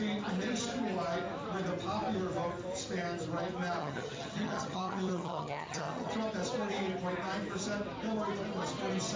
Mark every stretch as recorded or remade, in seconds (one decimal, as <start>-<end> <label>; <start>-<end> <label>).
0.0-3.8 recorded; 3.8-6.1 remade; 6.1-9.2 recorded